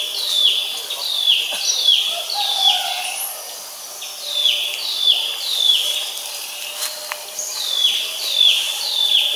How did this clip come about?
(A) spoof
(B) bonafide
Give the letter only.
B